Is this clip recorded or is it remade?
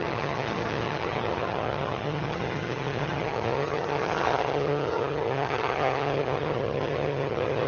remade